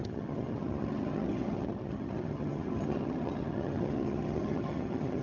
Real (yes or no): no